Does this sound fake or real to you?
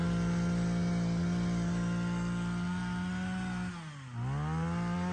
real